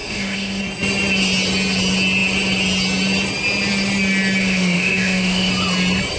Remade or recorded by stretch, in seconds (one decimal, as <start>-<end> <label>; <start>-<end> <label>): 0.0-0.6 remade; 0.6-4.4 recorded; 4.4-5.5 remade; 5.5-6.2 recorded